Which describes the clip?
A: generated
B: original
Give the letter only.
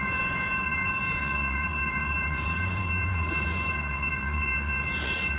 A